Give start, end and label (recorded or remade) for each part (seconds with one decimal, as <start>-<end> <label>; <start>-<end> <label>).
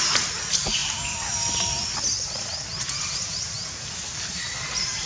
0.0-5.1 recorded